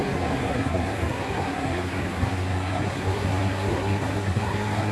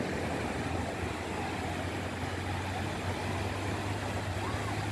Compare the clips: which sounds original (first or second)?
second